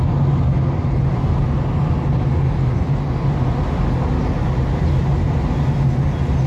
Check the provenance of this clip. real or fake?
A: real